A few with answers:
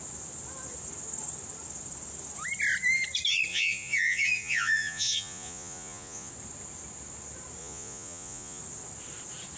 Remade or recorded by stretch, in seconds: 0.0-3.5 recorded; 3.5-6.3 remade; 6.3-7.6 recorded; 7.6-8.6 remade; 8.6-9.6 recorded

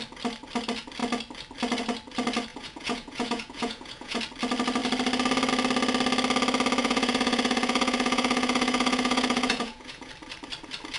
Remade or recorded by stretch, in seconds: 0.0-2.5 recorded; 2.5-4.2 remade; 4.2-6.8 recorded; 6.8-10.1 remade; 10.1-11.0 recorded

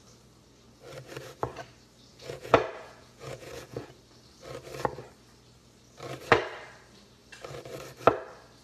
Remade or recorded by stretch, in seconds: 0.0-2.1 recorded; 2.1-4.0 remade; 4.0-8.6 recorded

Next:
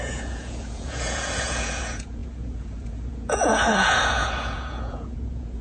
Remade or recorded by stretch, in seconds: 0.0-5.6 remade

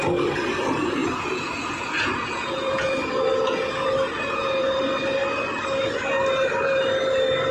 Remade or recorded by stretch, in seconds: 0.0-1.0 recorded; 1.0-4.8 remade; 4.8-7.5 recorded

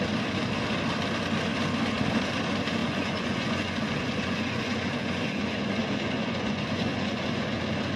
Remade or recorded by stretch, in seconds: 0.0-2.8 recorded; 2.8-7.6 remade; 7.6-8.0 recorded

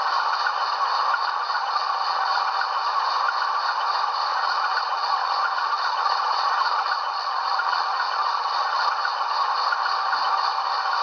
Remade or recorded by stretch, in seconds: 0.0-1.2 recorded; 1.2-2.4 remade; 2.4-4.3 recorded; 4.3-8.9 remade; 8.9-11.0 recorded

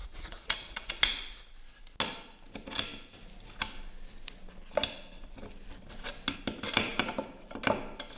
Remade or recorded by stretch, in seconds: 0.0-0.9 remade; 0.9-8.2 recorded